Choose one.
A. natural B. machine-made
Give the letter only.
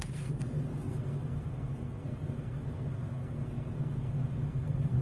B